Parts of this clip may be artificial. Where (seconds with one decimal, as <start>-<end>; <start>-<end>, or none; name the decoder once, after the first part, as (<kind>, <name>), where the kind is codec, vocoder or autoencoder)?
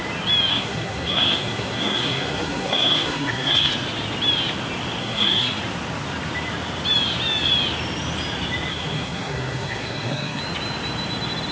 0.5-3.7 (codec, SNAC); 5.0-5.6; 8.7-10.4